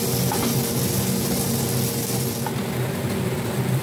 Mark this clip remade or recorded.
recorded